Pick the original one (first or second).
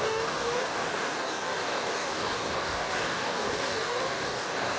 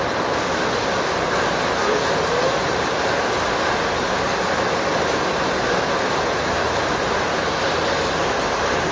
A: second